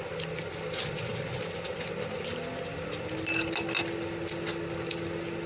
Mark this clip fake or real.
real